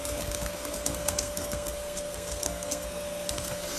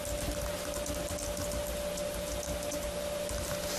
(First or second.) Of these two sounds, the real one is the second